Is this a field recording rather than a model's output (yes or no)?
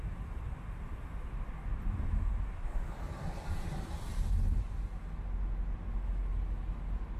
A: yes